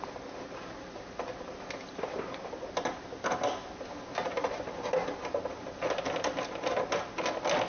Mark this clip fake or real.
real